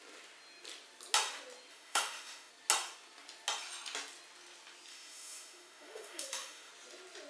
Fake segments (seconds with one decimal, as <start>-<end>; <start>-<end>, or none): 1.7-2.5; 4.9-6.7